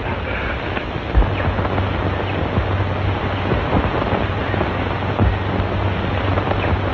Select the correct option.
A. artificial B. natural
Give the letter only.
B